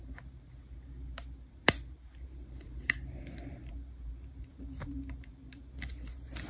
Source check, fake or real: fake